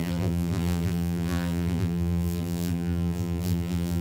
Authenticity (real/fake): fake